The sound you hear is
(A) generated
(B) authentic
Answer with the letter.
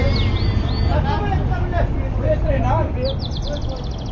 B